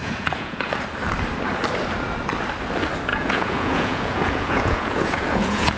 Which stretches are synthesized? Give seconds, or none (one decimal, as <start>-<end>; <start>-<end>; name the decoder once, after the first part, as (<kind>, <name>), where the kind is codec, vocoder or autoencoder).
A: 0.0-0.7 (vocoder, Vocos); 3.1-5.8